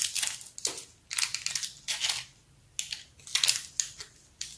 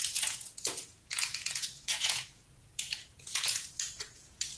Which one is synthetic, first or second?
second